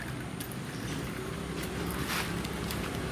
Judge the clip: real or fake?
real